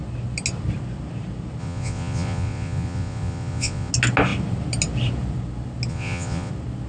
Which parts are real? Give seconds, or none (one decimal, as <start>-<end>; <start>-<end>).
0.0-1.6; 3.9-5.9; 6.5-6.9